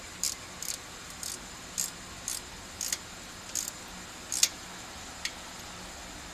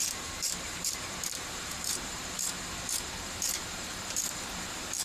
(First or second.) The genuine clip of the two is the first